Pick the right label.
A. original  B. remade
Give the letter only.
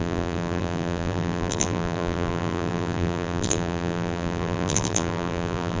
B